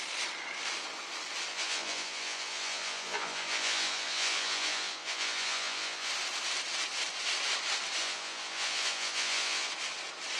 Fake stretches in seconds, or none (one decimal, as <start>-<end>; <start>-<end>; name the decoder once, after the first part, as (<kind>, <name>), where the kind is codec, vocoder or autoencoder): 1.5-6.1 (vocoder, Vocos); 8.0-9.7